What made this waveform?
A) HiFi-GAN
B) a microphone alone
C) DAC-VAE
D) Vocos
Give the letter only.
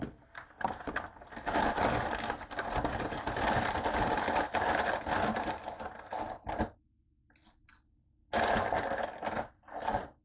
B